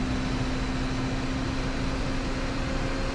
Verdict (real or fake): real